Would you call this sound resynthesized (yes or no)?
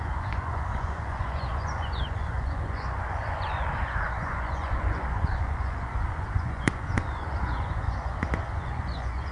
yes